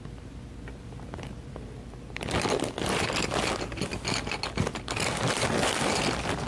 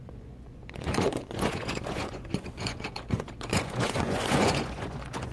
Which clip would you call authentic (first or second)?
first